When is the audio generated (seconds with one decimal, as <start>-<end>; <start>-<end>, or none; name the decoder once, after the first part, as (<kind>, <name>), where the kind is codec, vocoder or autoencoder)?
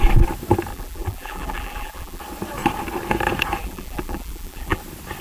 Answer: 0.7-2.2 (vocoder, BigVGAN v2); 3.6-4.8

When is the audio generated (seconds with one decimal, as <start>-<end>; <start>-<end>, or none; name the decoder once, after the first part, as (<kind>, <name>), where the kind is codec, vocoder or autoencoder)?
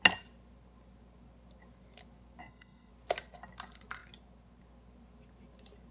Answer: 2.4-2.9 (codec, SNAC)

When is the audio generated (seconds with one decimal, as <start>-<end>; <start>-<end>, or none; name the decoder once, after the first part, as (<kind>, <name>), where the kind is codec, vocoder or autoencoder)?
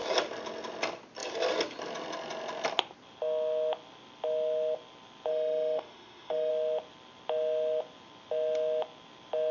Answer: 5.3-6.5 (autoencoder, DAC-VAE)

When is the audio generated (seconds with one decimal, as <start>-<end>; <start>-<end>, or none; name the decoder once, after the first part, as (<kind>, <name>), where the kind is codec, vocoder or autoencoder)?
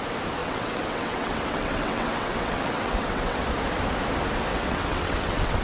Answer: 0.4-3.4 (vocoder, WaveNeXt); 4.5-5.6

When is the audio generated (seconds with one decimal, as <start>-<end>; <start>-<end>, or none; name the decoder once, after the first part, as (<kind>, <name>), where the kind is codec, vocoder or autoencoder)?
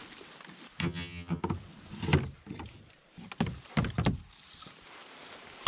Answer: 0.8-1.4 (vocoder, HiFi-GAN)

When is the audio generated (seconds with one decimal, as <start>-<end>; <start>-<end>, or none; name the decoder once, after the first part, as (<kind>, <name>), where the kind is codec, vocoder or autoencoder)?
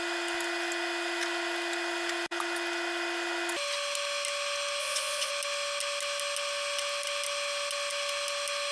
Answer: 4.8-5.3 (vocoder, Vocos)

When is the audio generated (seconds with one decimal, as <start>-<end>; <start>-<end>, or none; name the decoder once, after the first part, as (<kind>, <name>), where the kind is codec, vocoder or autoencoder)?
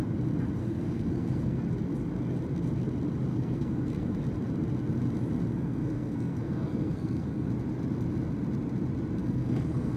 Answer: 0.6-1.6 (codec, SNAC); 3.3-4.2; 5.5-7.5; 9.2-10.0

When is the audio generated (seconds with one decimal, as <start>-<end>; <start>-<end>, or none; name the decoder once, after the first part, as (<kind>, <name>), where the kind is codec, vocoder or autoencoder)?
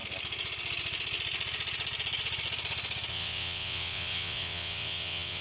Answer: 3.1-5.4 (vocoder, WaveNeXt)